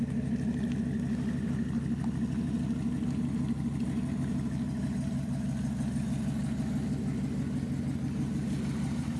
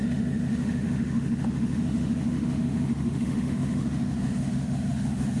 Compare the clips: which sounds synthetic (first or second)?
second